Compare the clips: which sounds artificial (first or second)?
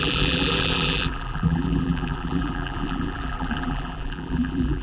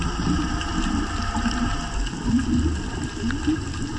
first